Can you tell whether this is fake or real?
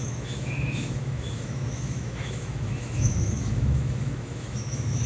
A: fake